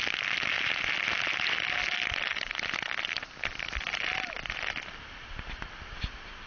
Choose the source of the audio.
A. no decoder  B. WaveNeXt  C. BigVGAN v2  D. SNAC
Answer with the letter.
A